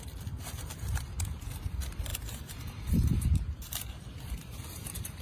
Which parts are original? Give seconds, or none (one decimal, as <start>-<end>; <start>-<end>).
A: 0.0-2.1